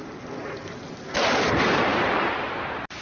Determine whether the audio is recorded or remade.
recorded